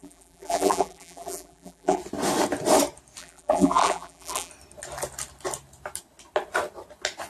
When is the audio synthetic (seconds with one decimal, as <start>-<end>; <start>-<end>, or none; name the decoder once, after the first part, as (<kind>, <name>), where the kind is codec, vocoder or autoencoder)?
0.0-2.0 (vocoder, BigVGAN v2); 3.2-4.5